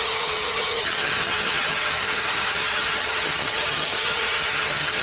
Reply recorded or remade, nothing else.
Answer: remade